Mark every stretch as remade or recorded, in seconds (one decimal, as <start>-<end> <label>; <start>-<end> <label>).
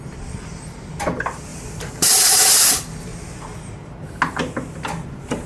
0.0-5.5 recorded